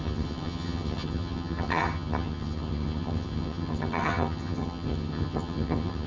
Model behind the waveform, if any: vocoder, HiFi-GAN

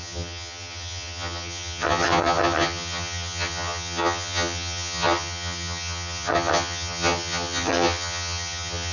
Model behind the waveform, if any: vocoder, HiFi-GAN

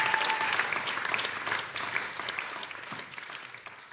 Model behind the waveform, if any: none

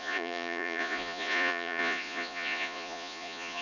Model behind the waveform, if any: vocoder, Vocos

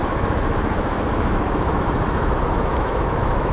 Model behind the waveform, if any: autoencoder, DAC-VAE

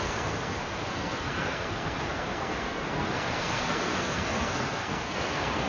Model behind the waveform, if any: codec, SNAC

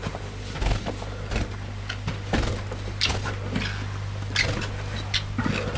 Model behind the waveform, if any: none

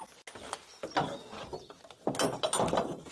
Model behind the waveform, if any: none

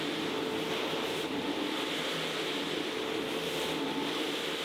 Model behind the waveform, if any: none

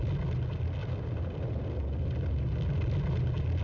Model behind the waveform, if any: none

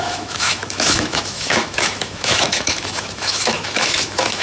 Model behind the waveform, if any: autoencoder, DAC-VAE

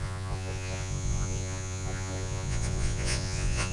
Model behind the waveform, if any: vocoder, Vocos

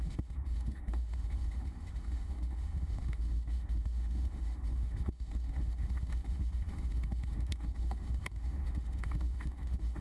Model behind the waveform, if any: autoencoder, DAC-VAE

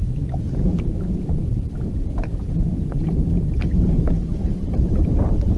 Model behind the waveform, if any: vocoder, BigVGAN v2